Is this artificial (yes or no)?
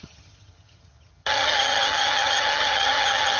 yes